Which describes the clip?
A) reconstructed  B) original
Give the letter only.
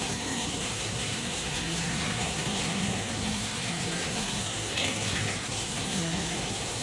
A